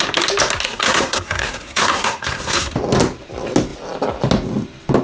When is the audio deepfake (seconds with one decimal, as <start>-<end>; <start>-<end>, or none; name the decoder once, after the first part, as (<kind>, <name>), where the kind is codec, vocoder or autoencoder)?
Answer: 0.7-2.7 (codec, SNAC)